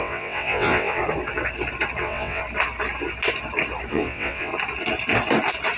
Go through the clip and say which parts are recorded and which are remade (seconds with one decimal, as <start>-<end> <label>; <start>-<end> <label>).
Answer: 0.0-1.0 remade; 1.0-2.0 recorded; 2.0-2.4 remade; 2.4-3.9 recorded; 3.9-4.5 remade; 4.5-5.8 recorded